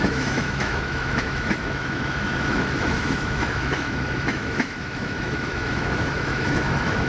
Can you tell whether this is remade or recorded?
remade